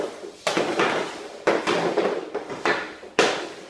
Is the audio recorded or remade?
recorded